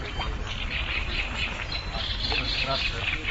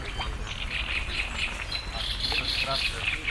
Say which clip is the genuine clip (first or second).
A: second